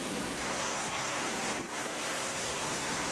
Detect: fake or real fake